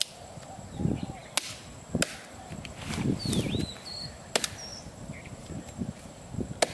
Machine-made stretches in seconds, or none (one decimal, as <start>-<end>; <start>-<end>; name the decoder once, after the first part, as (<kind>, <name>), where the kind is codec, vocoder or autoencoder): none